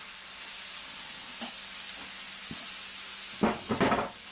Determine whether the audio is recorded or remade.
recorded